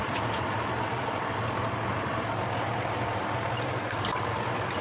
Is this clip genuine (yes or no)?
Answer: no